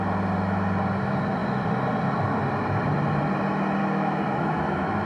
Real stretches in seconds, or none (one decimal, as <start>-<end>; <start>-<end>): 0.0-3.8

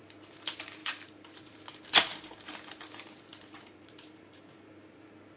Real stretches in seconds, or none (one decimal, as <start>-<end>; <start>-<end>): 0.0-0.8; 1.6-2.1; 5.0-5.4

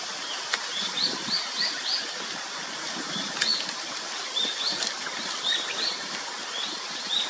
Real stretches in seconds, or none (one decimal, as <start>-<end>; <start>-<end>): 0.0-7.3

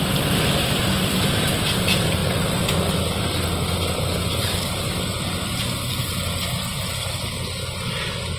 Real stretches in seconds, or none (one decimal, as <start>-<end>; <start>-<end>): 0.0-8.4

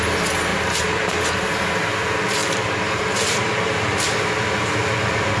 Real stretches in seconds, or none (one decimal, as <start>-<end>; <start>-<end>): 0.0-0.5; 1.2-2.4; 4.3-5.4